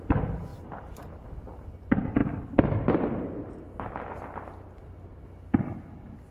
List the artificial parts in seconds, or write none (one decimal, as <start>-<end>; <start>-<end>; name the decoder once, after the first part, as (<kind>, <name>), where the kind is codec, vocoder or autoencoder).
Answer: 0.5-1.3 (vocoder, BigVGAN v2)